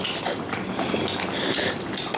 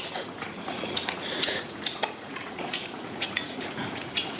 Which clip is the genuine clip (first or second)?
first